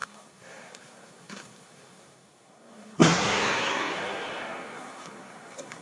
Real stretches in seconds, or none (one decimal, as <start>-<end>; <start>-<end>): none